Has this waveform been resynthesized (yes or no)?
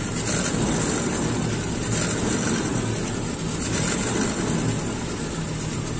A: no